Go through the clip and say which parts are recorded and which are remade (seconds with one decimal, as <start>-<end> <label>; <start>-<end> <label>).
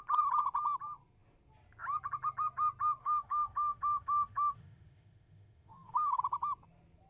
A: 0.0-3.0 recorded; 3.0-6.2 remade; 6.2-7.1 recorded